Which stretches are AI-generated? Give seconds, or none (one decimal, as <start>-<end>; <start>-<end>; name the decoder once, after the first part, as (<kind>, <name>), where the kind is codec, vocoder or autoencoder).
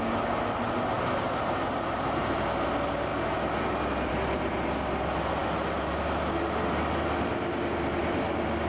none